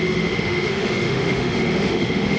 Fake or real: fake